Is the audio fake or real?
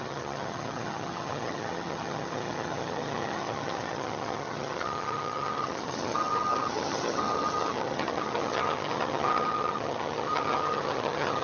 fake